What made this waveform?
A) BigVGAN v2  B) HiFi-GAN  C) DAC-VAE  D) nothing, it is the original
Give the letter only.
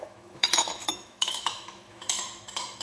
C